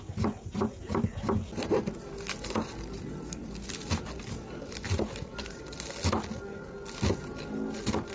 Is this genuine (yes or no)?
yes